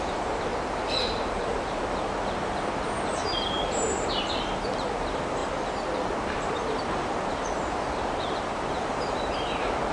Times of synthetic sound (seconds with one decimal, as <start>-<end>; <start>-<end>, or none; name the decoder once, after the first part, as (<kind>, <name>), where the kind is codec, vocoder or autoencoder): 0.0-0.5 (vocoder, BigVGAN v2); 1.3-5.4; 6.2-9.9